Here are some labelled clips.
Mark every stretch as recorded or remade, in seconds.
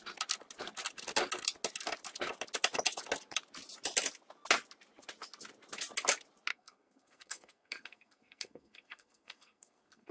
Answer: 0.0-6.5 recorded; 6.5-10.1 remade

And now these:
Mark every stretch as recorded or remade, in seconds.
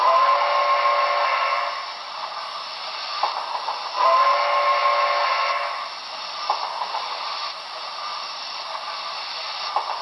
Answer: 0.0-10.0 recorded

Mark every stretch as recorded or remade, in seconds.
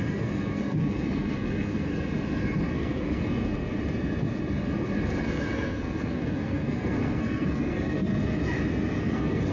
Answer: 0.0-1.9 remade; 1.9-2.7 recorded; 2.7-3.2 remade; 3.2-5.2 recorded; 5.2-8.1 remade; 8.1-9.0 recorded; 9.0-9.5 remade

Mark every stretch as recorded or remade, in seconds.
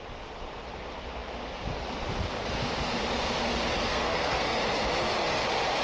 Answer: 0.0-3.9 recorded; 3.9-4.6 remade; 4.6-5.8 recorded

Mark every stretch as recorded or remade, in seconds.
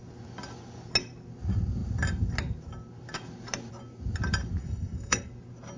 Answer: 0.0-4.6 recorded; 4.6-5.3 remade; 5.3-5.8 recorded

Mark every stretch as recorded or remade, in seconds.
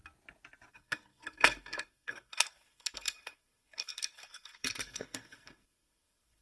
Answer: 0.0-0.7 recorded; 0.7-6.4 remade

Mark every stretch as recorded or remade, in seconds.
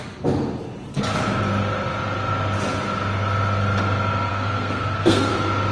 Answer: 0.0-4.3 recorded; 4.3-5.3 remade; 5.3-5.7 recorded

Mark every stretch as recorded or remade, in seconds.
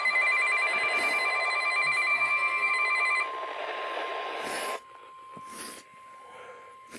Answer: 0.0-2.1 recorded; 2.1-2.7 remade; 2.7-7.0 recorded